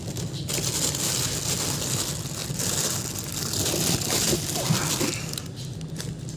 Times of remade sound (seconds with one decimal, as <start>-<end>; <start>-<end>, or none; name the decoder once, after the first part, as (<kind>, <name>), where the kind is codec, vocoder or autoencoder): none